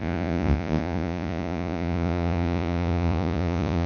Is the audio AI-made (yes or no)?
yes